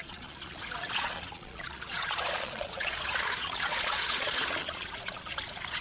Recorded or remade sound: remade